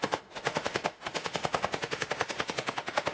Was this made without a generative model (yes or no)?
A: no